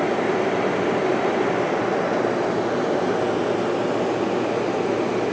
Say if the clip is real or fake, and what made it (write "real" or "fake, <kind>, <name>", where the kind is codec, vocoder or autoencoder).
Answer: real